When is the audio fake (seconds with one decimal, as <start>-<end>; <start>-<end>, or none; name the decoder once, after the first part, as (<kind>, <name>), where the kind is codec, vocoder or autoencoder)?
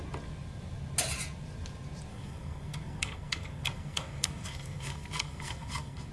2.1-6.1 (codec, SNAC)